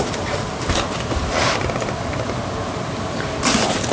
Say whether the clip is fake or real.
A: real